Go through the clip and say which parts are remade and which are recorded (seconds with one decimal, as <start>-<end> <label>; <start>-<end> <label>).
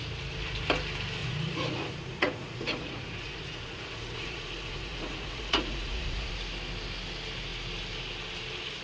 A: 0.0-1.2 recorded; 1.2-6.3 remade; 6.3-8.8 recorded